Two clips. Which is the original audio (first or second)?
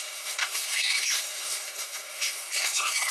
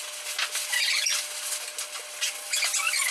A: second